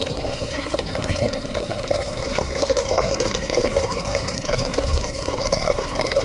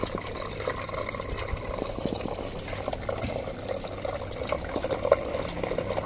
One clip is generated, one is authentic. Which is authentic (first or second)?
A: second